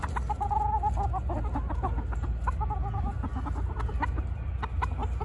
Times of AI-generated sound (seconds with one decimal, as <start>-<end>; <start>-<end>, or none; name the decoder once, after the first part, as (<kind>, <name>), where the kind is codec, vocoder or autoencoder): none